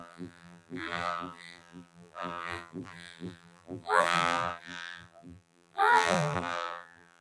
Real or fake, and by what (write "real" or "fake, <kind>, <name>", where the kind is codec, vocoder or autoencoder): fake, vocoder, BigVGAN v2